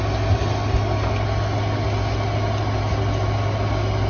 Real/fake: real